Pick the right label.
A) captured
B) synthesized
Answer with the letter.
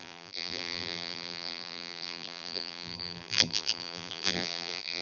B